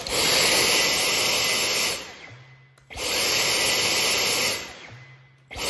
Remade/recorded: recorded